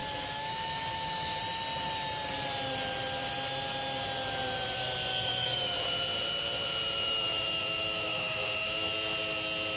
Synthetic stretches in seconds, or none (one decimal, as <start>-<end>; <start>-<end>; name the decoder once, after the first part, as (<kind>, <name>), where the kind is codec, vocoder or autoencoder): 0.0-1.4 (autoencoder, DAC-VAE); 5.1-8.9